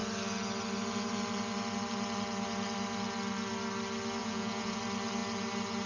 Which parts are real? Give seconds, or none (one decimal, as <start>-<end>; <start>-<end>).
0.0-4.2; 4.8-5.9